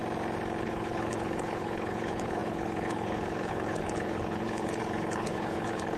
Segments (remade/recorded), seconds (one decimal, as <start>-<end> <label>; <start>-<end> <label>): 0.0-0.6 recorded; 0.6-6.0 remade